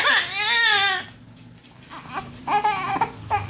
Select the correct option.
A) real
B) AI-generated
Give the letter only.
A